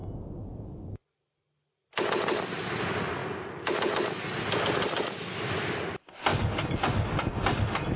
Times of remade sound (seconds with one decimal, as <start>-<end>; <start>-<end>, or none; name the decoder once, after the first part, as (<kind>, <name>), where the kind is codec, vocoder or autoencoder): 0.0-0.8 (vocoder, Vocos)